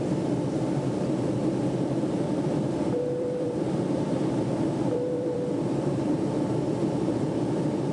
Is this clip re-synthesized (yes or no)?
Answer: yes